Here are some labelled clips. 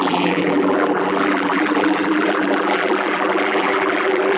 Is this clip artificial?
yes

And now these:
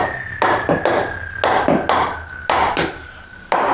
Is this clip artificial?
no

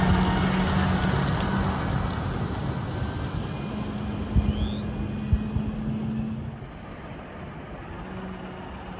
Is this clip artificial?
no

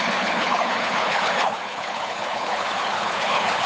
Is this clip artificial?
yes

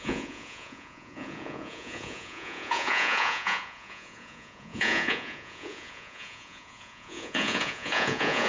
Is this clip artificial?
yes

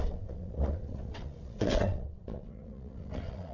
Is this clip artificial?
yes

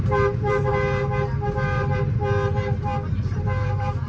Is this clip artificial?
yes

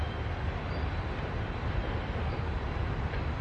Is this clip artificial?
no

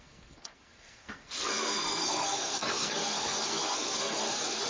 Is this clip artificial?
yes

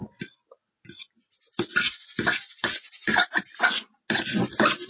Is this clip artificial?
no